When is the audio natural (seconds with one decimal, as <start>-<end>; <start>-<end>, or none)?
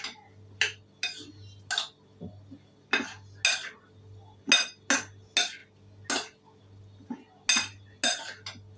0.0-8.8